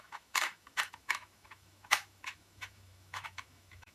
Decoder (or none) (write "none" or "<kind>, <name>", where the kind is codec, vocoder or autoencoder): autoencoder, DAC-VAE